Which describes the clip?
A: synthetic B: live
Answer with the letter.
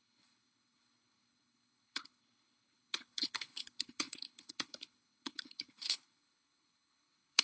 A